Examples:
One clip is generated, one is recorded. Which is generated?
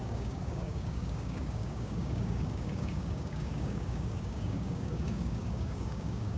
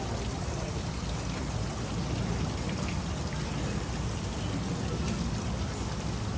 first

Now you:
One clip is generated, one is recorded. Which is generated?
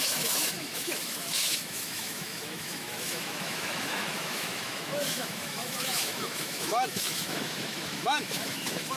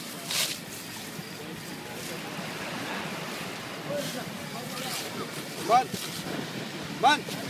first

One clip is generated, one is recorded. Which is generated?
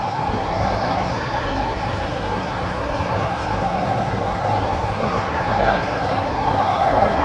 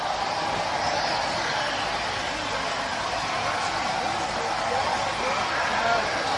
first